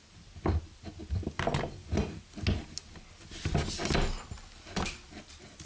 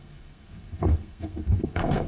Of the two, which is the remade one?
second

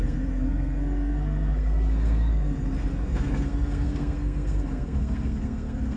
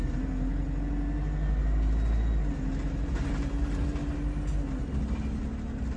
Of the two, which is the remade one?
first